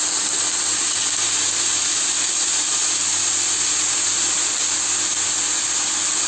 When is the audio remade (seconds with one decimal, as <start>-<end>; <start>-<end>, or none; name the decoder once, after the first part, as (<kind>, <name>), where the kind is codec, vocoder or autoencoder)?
1.7-2.3 (vocoder, BigVGAN v2)